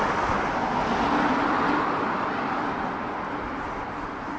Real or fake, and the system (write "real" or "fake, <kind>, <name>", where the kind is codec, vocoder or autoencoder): real